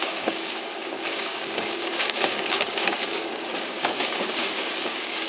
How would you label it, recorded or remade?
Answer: remade